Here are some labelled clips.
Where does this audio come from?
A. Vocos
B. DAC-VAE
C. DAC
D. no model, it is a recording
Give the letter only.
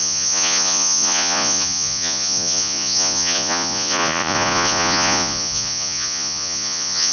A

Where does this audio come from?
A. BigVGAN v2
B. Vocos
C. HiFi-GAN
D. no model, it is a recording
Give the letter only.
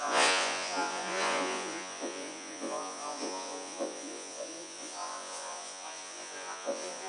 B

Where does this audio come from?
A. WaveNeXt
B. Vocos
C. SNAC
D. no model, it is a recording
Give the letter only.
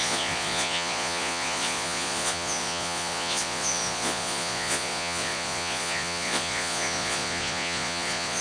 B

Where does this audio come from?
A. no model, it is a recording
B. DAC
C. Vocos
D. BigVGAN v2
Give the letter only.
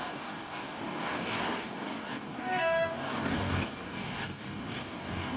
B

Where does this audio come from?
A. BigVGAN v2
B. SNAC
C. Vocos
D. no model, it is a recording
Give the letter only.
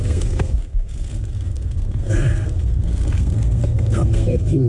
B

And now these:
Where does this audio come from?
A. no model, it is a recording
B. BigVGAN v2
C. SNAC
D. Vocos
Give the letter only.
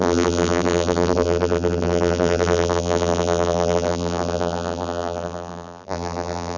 B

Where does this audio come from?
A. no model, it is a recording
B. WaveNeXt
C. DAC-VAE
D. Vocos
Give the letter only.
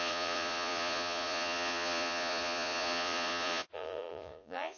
D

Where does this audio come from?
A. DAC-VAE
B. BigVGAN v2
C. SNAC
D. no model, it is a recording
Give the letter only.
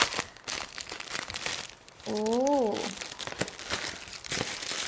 B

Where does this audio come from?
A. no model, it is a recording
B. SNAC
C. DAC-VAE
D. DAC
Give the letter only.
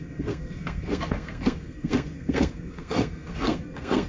B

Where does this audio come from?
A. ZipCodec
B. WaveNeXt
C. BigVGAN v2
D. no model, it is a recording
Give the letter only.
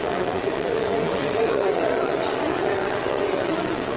B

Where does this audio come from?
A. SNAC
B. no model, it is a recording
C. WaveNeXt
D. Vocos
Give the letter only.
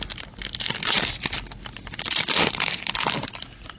B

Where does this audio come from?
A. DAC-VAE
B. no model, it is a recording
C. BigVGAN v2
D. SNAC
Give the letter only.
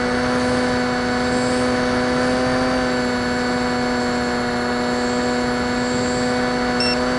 B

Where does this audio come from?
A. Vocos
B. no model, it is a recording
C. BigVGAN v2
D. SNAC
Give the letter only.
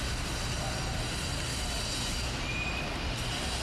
B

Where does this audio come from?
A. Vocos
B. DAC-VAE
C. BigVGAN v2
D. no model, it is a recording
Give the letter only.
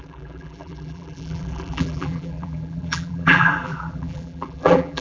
C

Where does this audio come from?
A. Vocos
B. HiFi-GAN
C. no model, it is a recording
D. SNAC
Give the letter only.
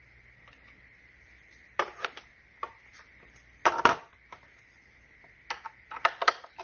C